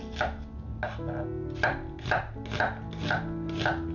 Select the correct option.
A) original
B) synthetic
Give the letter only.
A